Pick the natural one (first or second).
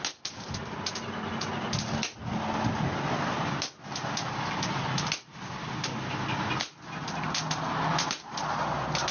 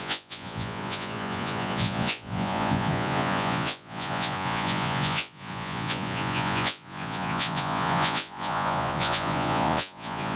first